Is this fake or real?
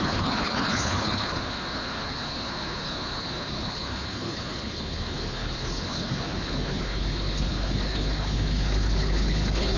fake